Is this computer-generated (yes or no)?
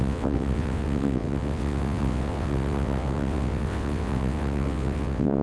yes